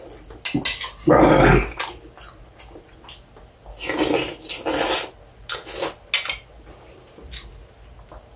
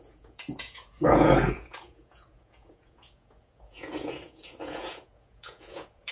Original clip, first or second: first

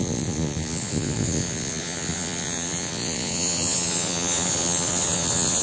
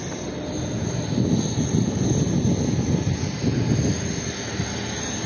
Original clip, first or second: second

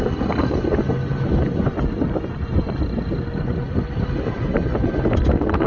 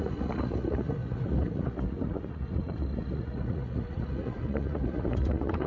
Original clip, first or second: first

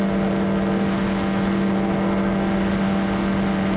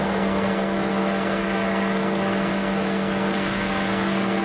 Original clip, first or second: first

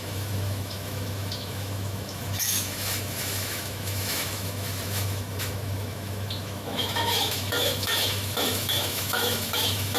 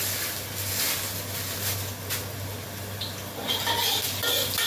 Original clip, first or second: second